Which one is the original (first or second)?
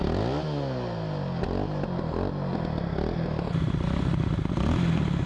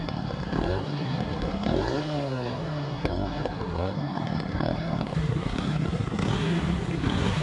first